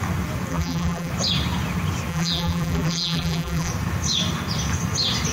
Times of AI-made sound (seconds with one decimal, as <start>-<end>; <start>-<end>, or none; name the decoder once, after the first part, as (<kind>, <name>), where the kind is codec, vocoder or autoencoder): 0.5-1.1 (vocoder, BigVGAN v2); 2.1-3.7